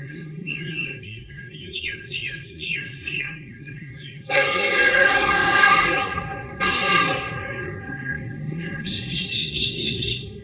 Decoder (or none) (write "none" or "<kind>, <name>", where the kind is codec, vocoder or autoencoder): codec, SNAC